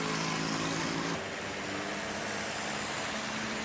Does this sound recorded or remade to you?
recorded